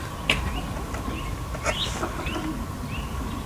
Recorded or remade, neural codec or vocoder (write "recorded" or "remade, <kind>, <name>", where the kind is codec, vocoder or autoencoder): recorded